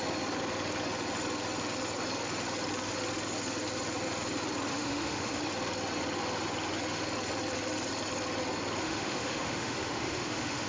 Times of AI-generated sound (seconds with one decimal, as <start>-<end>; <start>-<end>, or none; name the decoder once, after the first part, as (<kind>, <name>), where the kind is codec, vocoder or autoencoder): 4.7-5.4 (autoencoder, DAC-VAE); 8.8-10.7